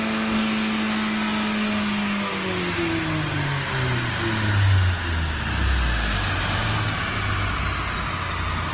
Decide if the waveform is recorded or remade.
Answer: recorded